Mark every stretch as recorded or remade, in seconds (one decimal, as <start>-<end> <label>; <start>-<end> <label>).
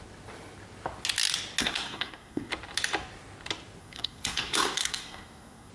0.0-1.6 recorded; 1.6-2.5 remade; 2.5-3.8 recorded; 3.8-5.7 remade